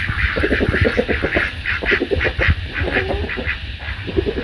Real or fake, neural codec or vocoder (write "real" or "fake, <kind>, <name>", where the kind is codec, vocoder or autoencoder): real